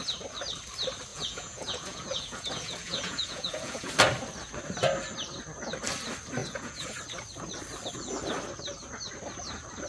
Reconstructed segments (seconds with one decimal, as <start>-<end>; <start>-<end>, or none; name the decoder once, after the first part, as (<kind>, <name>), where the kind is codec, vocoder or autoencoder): 1.1-3.9 (vocoder, Vocos); 6.4-7.0